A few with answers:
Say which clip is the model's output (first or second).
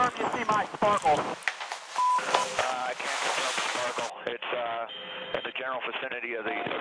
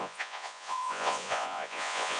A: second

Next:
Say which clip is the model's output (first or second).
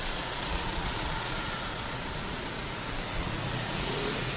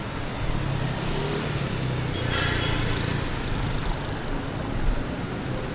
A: first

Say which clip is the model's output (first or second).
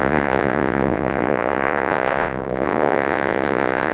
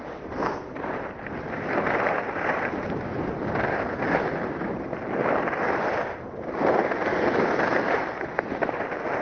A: first